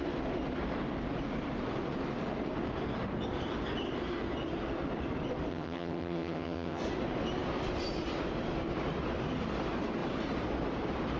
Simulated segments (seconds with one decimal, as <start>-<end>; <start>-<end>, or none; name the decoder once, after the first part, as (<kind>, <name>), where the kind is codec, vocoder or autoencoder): 5.5-6.8 (vocoder, HiFi-GAN)